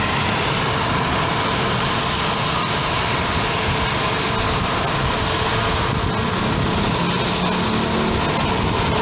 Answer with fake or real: real